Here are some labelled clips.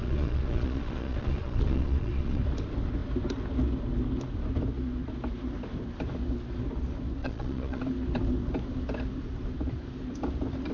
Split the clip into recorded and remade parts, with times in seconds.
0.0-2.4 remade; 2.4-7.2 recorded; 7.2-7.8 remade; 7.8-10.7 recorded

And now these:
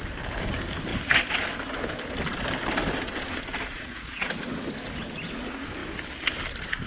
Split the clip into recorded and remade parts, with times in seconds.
0.0-3.7 recorded; 3.7-4.3 remade; 4.3-6.9 recorded

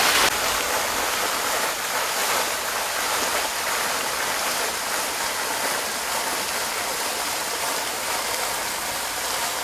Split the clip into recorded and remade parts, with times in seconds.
0.0-9.6 recorded

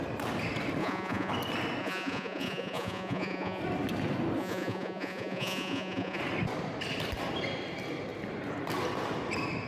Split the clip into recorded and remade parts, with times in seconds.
0.0-0.8 recorded; 0.8-1.3 remade; 1.3-1.8 recorded; 1.8-3.6 remade; 3.6-4.4 recorded; 4.4-6.2 remade; 6.2-9.7 recorded

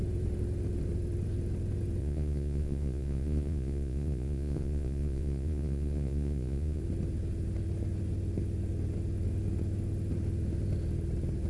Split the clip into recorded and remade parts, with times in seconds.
0.0-2.0 recorded; 2.0-6.8 remade; 6.8-11.5 recorded

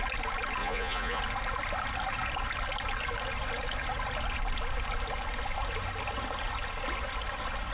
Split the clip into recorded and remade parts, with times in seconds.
0.0-0.6 recorded; 0.6-1.2 remade; 1.2-7.7 recorded

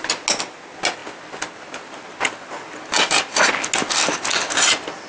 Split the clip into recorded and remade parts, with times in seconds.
0.0-5.1 recorded